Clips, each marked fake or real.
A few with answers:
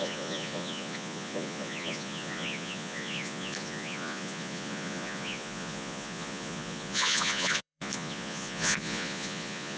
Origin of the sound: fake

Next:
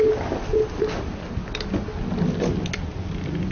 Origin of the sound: real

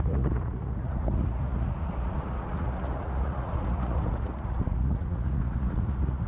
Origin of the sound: fake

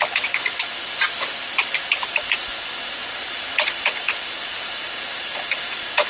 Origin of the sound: real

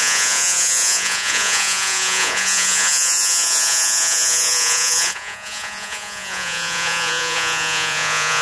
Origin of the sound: fake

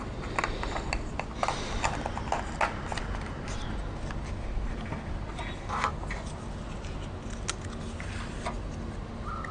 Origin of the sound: real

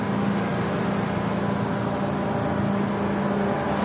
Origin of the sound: real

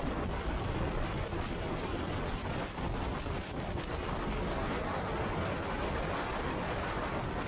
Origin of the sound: real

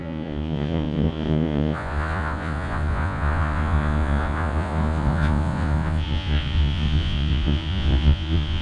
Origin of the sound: fake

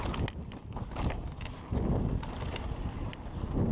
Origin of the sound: real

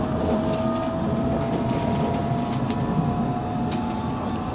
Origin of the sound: real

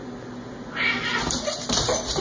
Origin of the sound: real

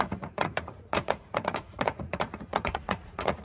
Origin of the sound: fake